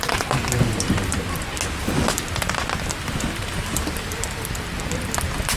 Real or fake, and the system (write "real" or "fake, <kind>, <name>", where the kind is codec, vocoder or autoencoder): real